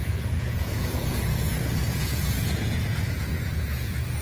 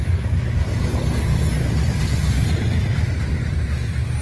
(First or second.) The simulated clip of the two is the first